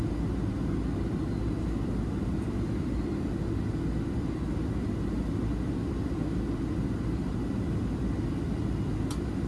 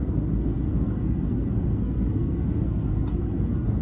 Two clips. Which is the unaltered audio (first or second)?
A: first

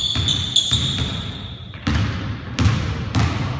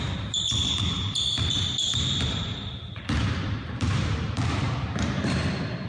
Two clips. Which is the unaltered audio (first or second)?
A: first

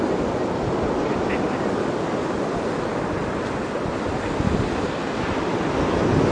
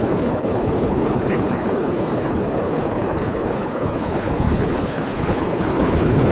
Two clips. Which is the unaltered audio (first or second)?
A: first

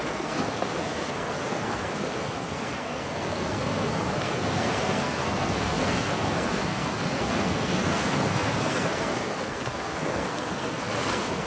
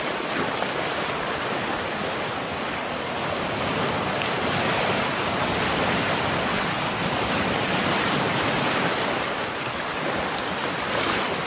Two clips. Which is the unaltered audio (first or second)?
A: second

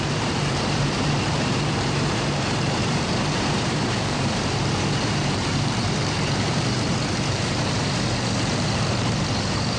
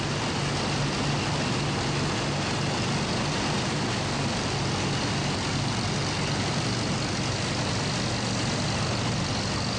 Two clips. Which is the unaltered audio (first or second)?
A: second